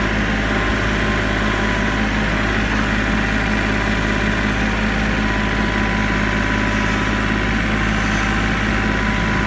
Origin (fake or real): real